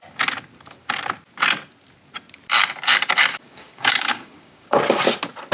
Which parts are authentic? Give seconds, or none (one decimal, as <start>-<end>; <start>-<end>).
0.0-3.3; 4.8-5.5